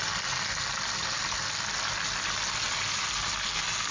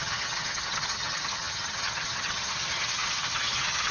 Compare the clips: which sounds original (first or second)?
first